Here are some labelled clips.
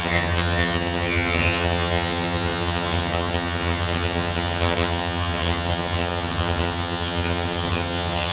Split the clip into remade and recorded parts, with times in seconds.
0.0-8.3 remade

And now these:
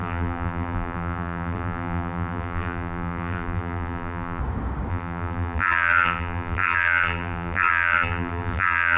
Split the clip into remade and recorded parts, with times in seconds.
0.0-4.4 remade; 4.4-4.9 recorded; 4.9-9.0 remade

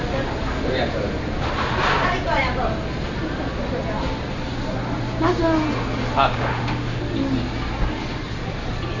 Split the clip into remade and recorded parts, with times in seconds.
0.0-6.3 recorded; 6.3-7.0 remade; 7.0-9.0 recorded

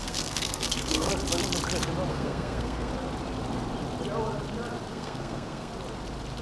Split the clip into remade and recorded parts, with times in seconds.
0.0-1.1 remade; 1.1-2.1 recorded; 2.1-2.9 remade; 2.9-4.9 recorded; 4.9-5.7 remade; 5.7-6.4 recorded

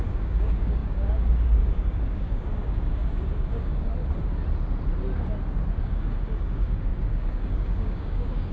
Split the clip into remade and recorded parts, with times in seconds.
0.0-3.9 remade; 3.9-5.8 recorded; 5.8-8.5 remade

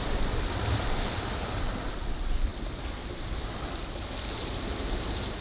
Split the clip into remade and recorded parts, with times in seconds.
0.0-5.4 recorded

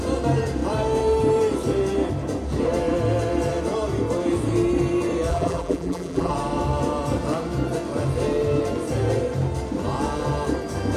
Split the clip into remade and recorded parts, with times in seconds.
0.0-5.3 recorded; 5.3-6.3 remade; 6.3-11.0 recorded